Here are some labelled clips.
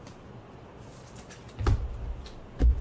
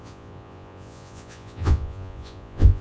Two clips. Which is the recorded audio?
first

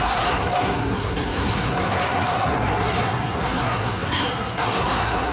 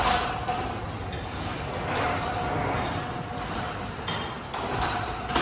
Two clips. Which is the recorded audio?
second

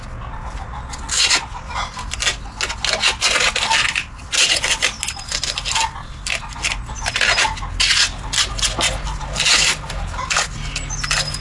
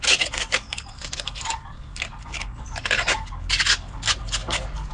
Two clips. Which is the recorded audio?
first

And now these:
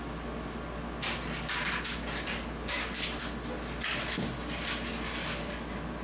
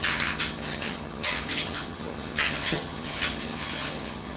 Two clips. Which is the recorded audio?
first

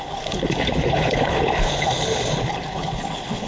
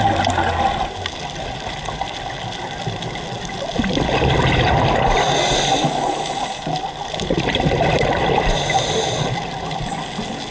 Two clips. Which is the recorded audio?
second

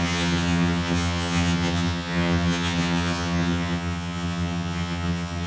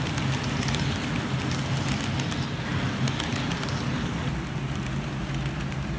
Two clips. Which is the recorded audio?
second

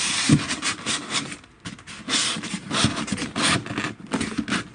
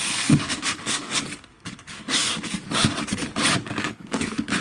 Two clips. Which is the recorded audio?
first